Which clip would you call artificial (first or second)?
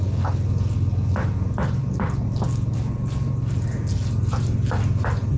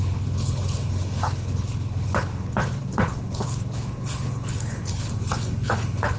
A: second